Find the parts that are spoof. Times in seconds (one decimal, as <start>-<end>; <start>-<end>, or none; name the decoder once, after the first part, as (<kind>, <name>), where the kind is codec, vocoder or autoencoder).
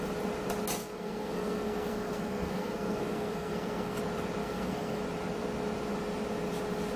0.8-4.0 (codec, SNAC); 4.4-5.0